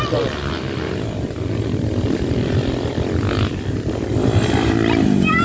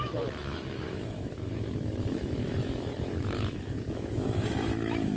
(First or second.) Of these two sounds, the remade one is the second